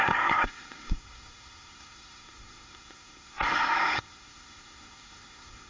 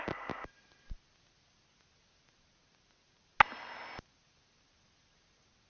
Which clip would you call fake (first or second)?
first